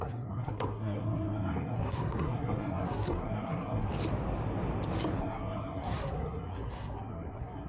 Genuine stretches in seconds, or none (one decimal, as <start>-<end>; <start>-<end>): 3.9-5.2